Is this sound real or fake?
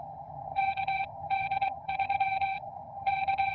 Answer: fake